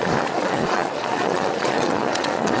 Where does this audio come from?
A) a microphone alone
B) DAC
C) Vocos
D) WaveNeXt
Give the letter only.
C